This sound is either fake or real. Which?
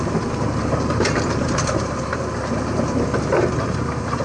fake